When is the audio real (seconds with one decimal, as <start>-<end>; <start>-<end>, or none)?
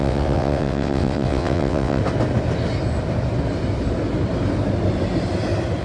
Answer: 2.0-5.8